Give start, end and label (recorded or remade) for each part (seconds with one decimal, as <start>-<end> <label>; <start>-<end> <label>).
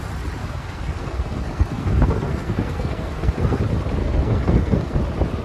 0.0-0.4 recorded; 0.4-3.6 remade; 3.6-4.0 recorded; 4.0-5.0 remade; 5.0-5.4 recorded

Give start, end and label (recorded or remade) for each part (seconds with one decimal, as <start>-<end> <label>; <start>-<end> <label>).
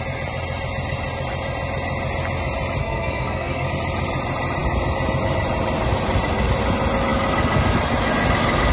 0.0-2.8 recorded; 2.8-3.7 remade; 3.7-8.7 recorded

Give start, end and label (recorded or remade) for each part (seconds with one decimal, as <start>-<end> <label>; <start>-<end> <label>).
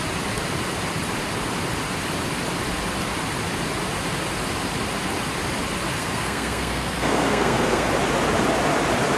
0.0-6.0 recorded; 6.0-7.9 remade; 7.9-9.2 recorded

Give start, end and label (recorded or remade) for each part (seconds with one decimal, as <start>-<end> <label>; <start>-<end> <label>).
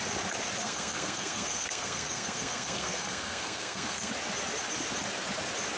0.0-0.6 recorded; 0.6-4.1 remade; 4.1-5.8 recorded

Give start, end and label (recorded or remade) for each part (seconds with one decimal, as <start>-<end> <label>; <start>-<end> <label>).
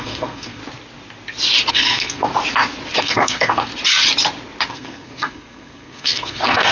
0.0-0.6 remade; 0.6-1.7 recorded; 1.7-2.3 remade; 2.3-3.0 recorded; 3.0-3.7 remade; 3.7-4.7 recorded; 4.7-6.7 remade